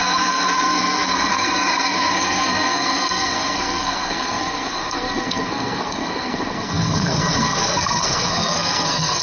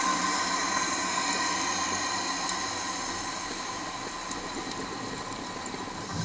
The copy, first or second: first